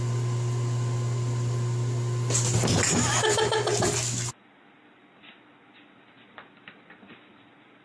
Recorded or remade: recorded